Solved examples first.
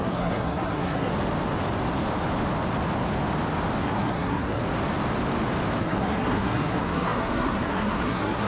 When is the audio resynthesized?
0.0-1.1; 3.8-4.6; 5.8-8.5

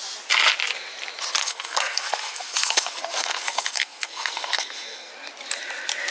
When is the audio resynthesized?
1.4-5.1

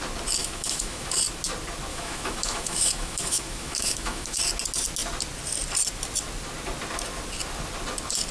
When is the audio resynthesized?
0.4-1.2; 1.9-4.4

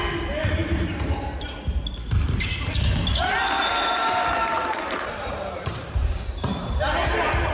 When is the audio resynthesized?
4.0-7.1

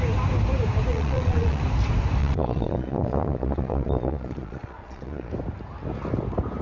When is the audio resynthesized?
0.9-1.6; 2.2-5.3

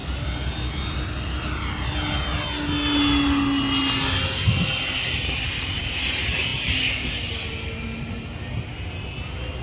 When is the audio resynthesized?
none